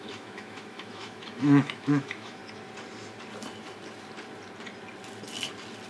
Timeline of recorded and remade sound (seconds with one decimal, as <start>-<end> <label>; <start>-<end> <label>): 0.0-2.4 remade; 2.4-5.9 recorded